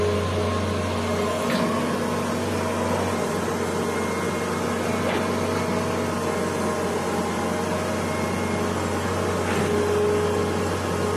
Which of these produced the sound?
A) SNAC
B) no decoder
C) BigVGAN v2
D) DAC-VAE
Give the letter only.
B